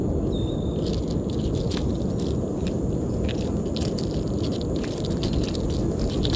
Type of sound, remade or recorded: recorded